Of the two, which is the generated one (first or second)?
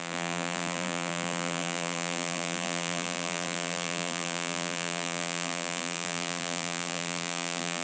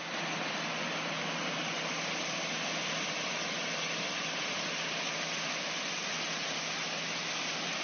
first